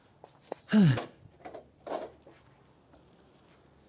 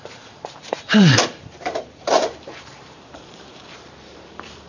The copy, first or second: second